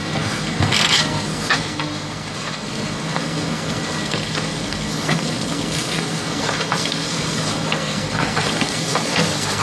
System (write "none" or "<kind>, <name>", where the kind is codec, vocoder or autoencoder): codec, SNAC